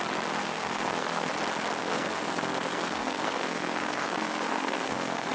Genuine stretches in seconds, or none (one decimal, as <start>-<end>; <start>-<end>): 0.0-0.4; 1.3-1.8